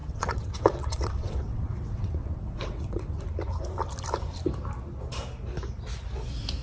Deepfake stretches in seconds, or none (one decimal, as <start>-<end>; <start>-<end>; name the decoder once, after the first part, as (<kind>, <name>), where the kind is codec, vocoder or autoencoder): 0.0-3.2 (vocoder, WaveNeXt)